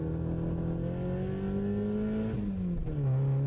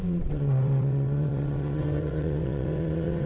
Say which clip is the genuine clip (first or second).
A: first